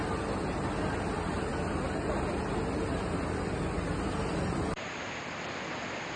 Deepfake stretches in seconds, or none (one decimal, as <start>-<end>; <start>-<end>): none